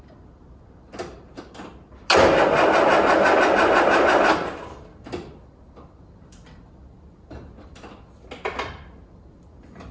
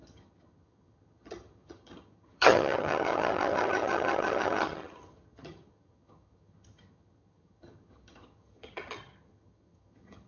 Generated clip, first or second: second